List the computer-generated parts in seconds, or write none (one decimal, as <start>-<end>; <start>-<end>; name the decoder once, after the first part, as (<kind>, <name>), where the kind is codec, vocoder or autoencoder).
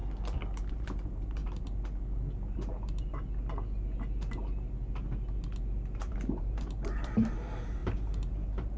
0.7-1.4 (vocoder, BigVGAN v2); 6.1-8.8